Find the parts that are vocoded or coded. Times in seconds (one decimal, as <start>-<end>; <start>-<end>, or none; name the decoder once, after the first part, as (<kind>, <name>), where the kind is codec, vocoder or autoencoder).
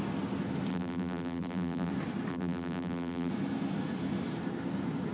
0.7-1.9 (vocoder, BigVGAN v2); 2.3-3.3